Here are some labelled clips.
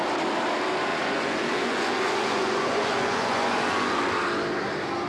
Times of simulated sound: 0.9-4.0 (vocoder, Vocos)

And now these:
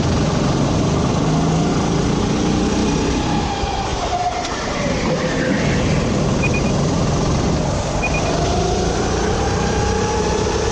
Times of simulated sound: none

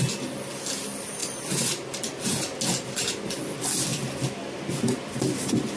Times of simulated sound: none